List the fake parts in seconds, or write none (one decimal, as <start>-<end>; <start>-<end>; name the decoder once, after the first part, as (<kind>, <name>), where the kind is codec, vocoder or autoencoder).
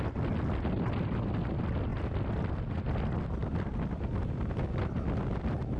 1.9-2.6 (vocoder, BigVGAN v2); 3.4-5.8